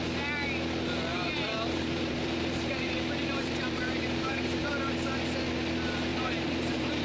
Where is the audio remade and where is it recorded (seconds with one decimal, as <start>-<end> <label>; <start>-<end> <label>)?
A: 0.0-1.1 recorded; 1.1-4.7 remade; 4.7-6.1 recorded; 6.1-7.0 remade